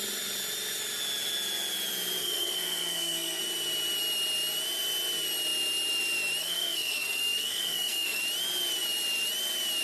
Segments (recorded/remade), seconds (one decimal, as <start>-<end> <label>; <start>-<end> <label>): 0.0-2.2 recorded; 2.2-3.4 remade; 3.4-6.4 recorded; 6.4-8.2 remade; 8.2-9.8 recorded